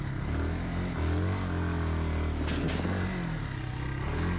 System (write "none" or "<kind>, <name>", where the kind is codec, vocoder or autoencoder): none